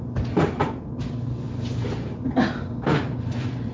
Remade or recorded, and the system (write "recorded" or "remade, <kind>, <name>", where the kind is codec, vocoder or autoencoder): remade, vocoder, BigVGAN v2